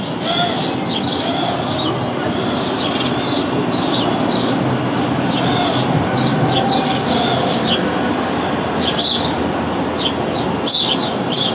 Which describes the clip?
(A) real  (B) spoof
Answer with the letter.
A